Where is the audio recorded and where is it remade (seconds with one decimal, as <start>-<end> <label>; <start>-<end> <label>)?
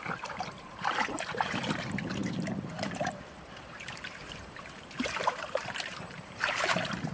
0.0-7.1 remade